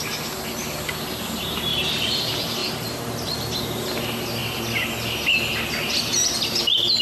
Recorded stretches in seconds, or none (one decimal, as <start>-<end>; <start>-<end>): 0.0-1.7; 2.2-2.6; 3.6-7.0